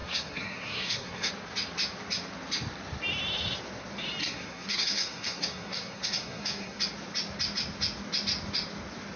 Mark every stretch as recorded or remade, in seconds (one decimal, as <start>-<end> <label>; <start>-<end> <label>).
0.0-1.3 remade; 1.3-4.2 recorded; 4.2-6.8 remade; 6.8-9.2 recorded